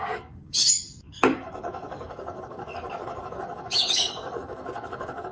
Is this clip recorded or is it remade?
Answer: remade